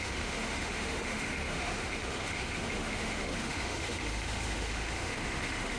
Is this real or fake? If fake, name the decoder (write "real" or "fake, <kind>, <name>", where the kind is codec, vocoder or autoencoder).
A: fake, autoencoder, DAC-VAE